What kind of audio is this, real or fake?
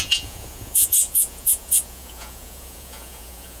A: fake